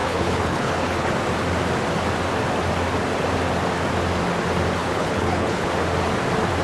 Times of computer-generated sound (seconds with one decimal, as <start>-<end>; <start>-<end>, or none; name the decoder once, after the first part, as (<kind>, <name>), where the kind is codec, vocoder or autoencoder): 0.0-1.1 (codec, HILCodec); 4.8-5.7